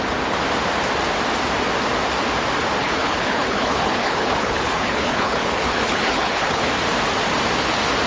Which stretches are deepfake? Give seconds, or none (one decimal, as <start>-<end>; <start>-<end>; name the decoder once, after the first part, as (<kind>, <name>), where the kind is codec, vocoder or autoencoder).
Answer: 2.8-6.7 (codec, HILCodec)